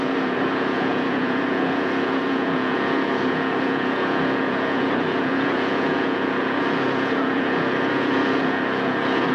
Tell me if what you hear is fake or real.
fake